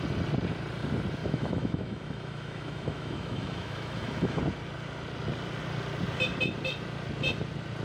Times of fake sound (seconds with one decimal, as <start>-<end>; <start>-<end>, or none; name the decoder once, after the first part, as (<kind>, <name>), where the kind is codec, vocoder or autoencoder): 1.2-4.4 (autoencoder, DAC-VAE)